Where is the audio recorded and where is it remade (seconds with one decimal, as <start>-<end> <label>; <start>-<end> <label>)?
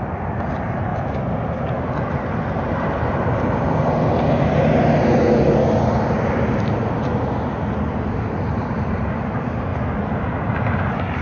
0.0-0.9 remade; 0.9-1.5 recorded; 1.5-3.8 remade; 3.8-8.5 recorded; 8.5-11.2 remade